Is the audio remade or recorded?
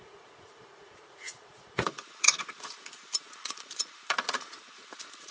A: remade